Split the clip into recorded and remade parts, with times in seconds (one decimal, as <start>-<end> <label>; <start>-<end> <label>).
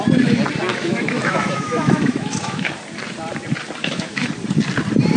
0.0-0.7 recorded; 0.7-2.7 remade; 2.7-3.8 recorded; 3.8-4.3 remade; 4.3-5.2 recorded